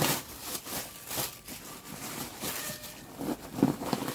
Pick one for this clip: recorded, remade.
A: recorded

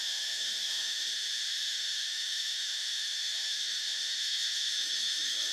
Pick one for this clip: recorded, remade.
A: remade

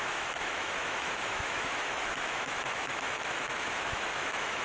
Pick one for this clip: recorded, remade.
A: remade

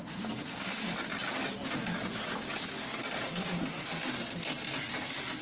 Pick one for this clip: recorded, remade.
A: recorded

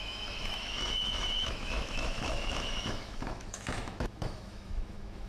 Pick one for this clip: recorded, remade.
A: remade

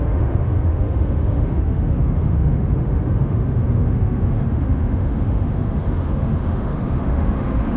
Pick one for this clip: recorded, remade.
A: remade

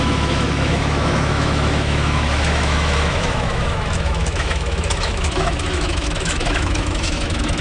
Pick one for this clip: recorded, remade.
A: remade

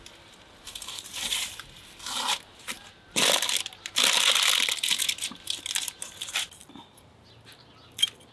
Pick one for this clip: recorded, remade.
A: recorded